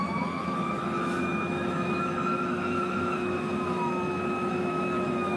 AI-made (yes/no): yes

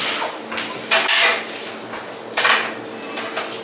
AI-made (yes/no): no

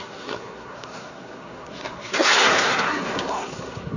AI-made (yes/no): yes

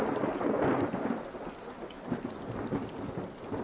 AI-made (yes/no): no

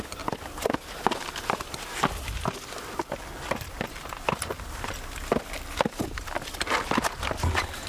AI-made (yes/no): no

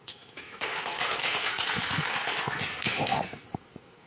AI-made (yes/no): yes